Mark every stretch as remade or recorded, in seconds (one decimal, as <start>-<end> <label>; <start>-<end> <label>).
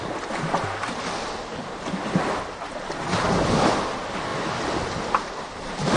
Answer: 0.0-6.0 recorded